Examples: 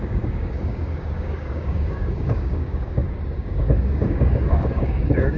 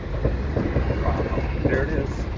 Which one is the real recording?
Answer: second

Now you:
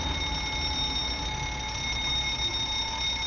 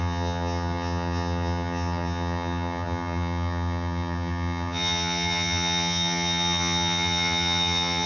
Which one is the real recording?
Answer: first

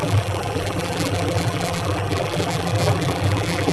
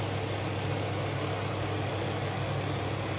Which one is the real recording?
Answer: second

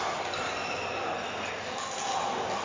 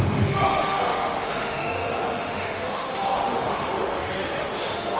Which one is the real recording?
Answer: first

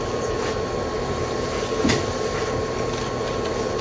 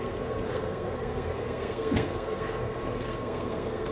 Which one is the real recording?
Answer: first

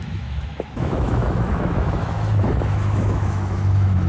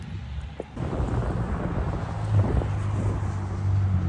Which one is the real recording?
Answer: second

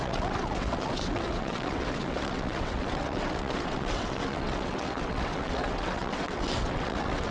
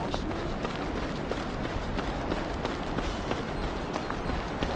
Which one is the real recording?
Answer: second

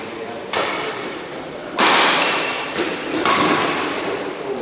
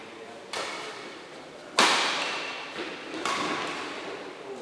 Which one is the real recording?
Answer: second